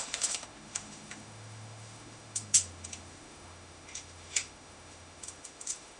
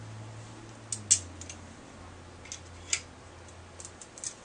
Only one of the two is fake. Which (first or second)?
first